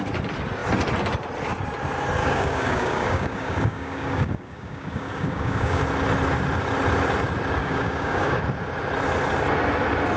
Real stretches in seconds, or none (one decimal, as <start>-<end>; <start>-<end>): 0.0-2.2; 5.8-7.6; 8.4-10.2